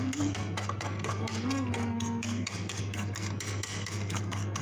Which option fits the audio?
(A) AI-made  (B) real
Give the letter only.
A